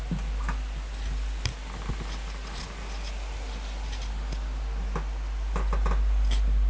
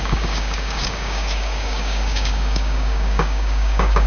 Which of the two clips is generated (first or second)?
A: second